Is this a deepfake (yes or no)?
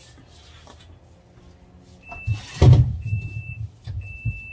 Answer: no